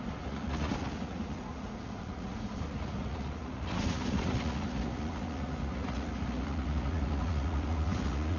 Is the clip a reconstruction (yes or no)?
yes